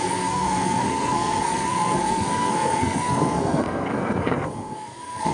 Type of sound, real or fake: fake